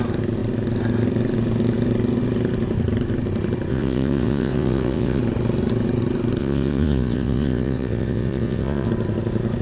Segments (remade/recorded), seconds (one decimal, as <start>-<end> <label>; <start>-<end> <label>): 0.0-3.7 recorded; 3.7-5.2 remade; 5.2-6.4 recorded; 6.4-8.9 remade; 8.9-9.6 recorded